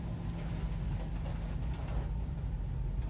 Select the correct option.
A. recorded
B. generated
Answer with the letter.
A